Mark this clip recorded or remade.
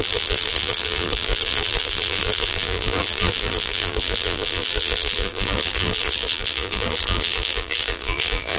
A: remade